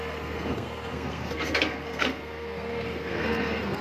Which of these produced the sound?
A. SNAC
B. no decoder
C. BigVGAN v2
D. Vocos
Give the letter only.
A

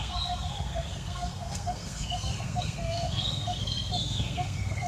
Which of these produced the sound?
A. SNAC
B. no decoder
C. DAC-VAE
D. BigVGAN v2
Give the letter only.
A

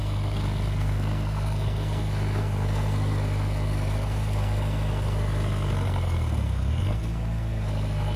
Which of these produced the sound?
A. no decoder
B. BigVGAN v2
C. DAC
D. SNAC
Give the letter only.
D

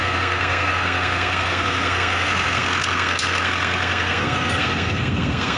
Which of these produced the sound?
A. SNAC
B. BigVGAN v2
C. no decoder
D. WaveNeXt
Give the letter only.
A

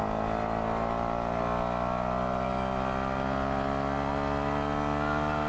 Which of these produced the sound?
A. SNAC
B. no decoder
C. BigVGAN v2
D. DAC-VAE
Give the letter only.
B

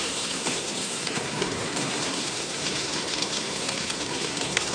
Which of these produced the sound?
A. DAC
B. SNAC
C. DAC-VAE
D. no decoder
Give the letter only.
B